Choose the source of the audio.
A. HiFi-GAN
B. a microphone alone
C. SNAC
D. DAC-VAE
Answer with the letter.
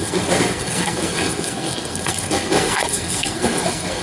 C